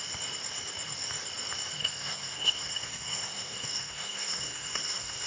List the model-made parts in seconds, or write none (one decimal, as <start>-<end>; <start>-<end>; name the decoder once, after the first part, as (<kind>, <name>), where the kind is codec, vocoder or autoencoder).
1.8-5.3 (codec, SNAC)